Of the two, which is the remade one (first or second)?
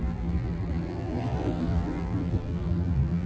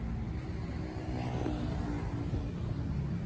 first